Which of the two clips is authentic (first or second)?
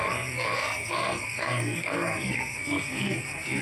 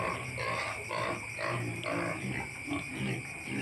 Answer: second